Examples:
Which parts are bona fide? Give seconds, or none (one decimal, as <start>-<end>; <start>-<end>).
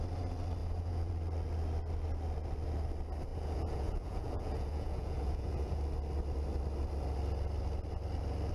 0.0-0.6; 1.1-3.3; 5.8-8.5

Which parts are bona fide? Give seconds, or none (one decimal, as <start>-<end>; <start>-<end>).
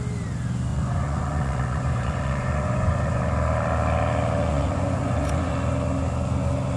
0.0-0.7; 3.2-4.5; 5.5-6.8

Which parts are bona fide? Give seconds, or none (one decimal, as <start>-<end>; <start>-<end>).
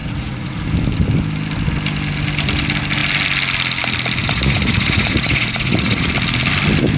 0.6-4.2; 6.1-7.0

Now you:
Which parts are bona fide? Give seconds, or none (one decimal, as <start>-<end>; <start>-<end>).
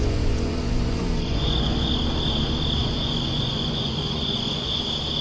1.9-2.8; 4.8-5.2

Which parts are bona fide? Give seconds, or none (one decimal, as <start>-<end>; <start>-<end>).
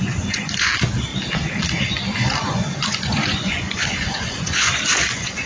0.7-2.4